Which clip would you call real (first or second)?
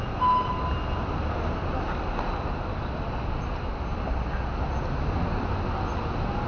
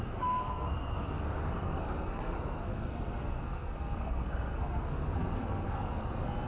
first